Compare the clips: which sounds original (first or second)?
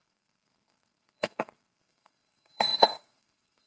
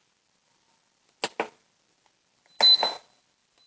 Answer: second